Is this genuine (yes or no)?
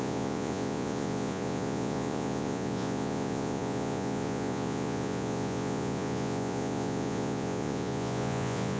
no